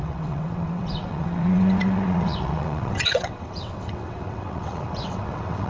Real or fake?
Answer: fake